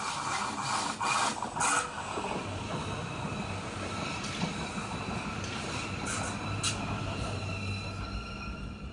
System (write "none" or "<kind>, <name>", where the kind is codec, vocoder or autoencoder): none